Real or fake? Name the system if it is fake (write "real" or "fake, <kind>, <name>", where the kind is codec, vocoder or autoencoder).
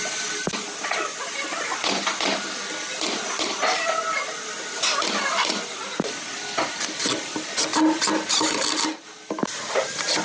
real